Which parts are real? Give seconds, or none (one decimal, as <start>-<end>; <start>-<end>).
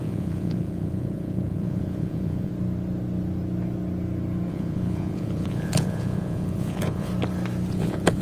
2.5-4.5; 7.1-7.7